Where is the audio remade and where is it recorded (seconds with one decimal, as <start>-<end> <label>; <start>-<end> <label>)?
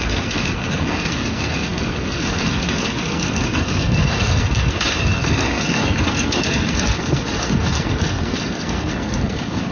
0.0-9.7 remade